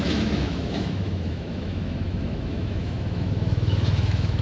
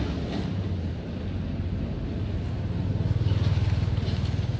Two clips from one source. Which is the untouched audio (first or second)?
second